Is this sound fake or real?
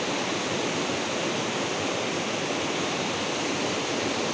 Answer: real